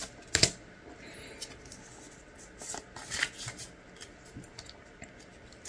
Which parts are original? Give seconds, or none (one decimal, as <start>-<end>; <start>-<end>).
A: 0.0-5.7